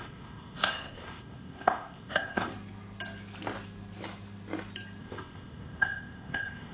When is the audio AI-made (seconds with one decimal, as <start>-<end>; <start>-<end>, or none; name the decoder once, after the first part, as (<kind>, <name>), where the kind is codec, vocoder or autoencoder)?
0.0-2.5 (codec, ZipCodec); 5.0-6.7